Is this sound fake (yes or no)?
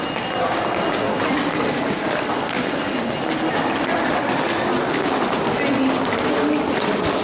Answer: no